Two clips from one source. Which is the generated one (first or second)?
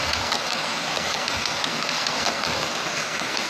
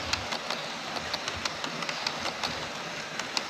first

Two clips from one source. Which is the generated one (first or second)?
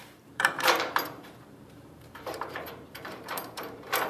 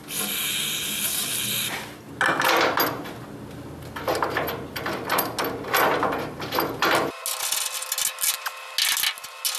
first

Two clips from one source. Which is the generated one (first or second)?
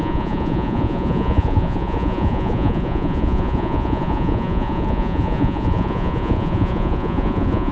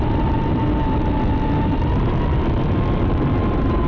first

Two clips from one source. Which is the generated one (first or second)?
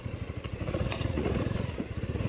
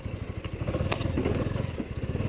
first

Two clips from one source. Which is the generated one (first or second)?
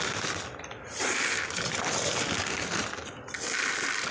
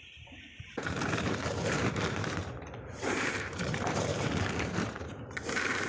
second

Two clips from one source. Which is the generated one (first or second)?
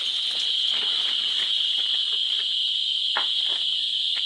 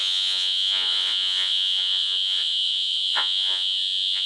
second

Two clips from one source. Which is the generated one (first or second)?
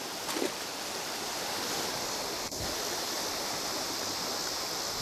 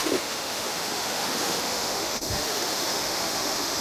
second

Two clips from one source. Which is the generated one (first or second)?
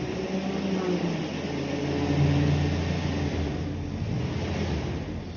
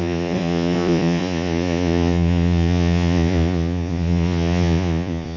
second